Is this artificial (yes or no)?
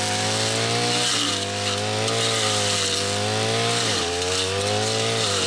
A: no